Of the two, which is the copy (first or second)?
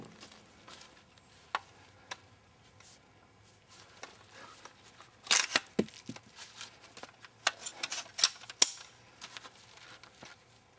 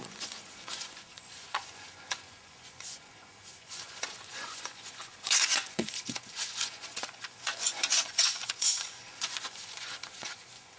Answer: second